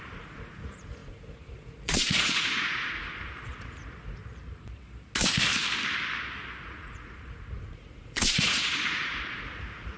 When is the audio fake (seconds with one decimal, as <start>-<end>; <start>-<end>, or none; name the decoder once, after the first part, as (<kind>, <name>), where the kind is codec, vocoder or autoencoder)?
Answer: 0.0-4.2 (vocoder, Vocos); 6.6-10.0